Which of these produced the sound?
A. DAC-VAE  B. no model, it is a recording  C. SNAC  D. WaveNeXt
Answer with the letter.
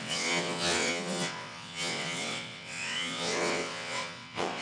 D